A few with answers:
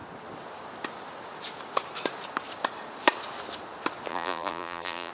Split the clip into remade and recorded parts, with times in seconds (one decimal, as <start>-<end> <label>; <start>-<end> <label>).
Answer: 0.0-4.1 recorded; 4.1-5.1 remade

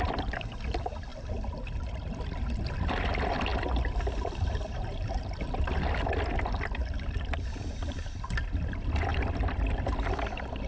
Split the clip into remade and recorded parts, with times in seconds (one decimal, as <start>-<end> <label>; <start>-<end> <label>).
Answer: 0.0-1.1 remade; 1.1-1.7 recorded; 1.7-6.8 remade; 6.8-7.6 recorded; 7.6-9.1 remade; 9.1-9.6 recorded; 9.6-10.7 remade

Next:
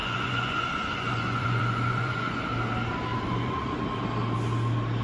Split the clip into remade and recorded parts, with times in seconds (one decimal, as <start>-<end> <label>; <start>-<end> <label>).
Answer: 0.0-2.4 remade; 2.4-3.1 recorded; 3.1-3.8 remade; 3.8-5.0 recorded

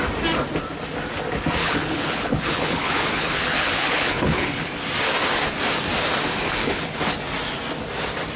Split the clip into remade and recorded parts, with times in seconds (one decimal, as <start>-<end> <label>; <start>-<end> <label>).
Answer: 0.0-1.6 recorded; 1.6-4.7 remade; 4.7-6.6 recorded; 6.6-7.1 remade; 7.1-8.4 recorded

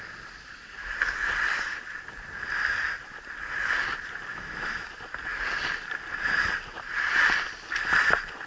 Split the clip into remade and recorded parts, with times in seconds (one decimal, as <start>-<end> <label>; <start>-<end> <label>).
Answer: 0.0-4.3 recorded; 4.3-4.9 remade; 4.9-8.5 recorded

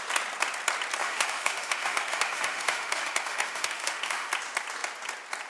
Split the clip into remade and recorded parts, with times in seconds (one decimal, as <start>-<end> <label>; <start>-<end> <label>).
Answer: 0.0-1.0 recorded; 1.0-4.3 remade; 4.3-5.5 recorded

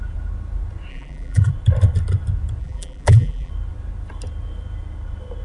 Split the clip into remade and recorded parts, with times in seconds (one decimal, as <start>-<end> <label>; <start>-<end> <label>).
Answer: 0.0-0.9 recorded; 0.9-1.5 remade; 1.5-2.6 recorded; 2.6-3.5 remade; 3.5-5.4 recorded

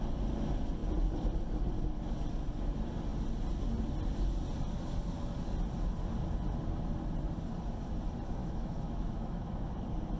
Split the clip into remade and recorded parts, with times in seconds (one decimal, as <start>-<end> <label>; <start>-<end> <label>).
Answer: 0.0-8.4 recorded; 8.4-9.7 remade; 9.7-10.2 recorded